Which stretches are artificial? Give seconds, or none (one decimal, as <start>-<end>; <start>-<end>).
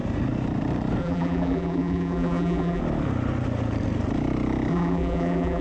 1.0-2.8; 4.7-5.6